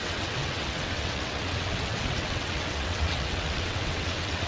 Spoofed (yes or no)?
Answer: yes